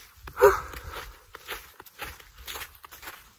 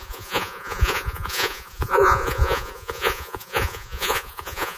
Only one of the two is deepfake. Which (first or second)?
second